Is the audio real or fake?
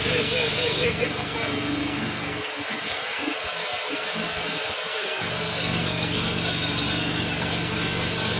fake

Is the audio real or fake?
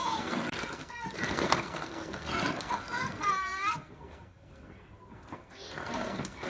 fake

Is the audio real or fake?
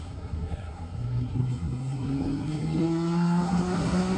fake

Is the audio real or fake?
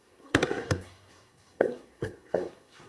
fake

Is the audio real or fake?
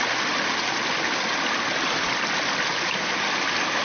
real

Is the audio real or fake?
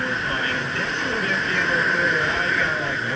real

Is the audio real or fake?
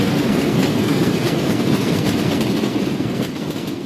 fake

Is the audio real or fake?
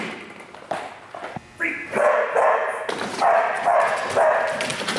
real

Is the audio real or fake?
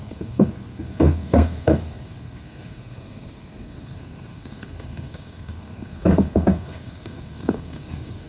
fake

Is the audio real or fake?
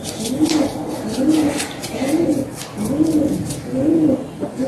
real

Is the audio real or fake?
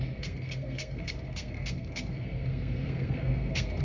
fake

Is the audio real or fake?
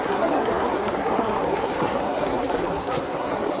fake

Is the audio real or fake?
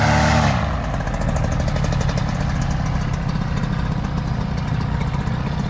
real